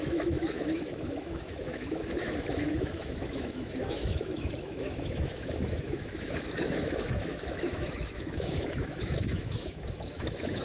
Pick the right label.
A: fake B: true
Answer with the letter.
A